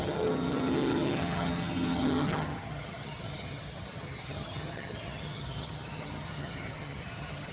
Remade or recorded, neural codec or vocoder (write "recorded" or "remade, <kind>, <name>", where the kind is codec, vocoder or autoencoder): remade, vocoder, HiFi-GAN